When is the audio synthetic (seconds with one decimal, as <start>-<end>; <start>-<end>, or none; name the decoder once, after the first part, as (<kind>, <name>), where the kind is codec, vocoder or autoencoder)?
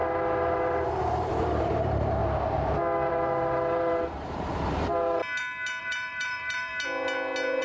0.0-2.2 (vocoder, BigVGAN v2); 3.1-5.2; 5.8-6.7